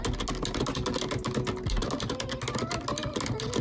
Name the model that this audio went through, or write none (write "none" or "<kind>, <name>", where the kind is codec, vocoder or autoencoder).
none